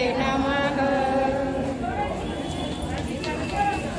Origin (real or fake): real